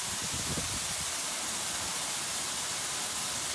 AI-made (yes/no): yes